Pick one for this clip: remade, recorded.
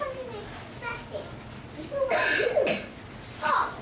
recorded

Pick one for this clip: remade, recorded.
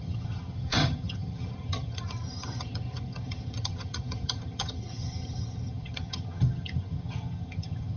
remade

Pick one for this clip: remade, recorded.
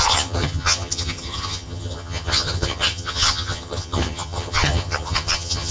remade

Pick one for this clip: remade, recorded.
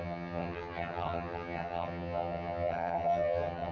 remade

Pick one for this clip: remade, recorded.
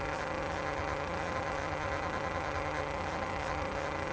remade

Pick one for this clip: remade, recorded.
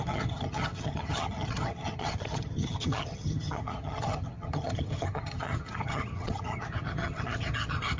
remade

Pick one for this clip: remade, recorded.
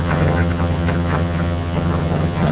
remade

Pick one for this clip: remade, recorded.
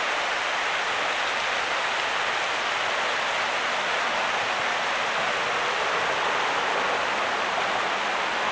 recorded